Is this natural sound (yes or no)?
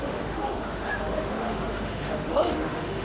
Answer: no